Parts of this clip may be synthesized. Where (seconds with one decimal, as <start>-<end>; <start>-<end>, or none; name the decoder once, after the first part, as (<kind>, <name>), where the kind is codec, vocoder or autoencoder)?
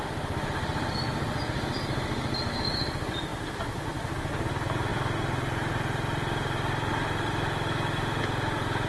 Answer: none